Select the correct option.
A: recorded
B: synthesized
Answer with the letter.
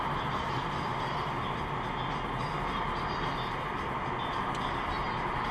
A